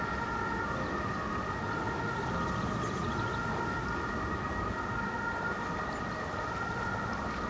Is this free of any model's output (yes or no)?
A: yes